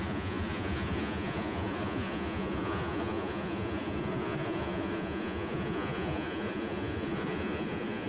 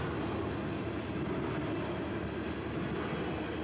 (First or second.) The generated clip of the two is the first